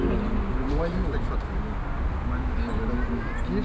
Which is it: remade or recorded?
recorded